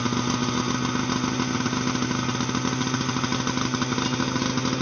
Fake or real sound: real